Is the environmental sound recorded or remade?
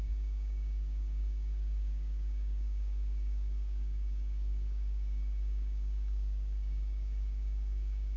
remade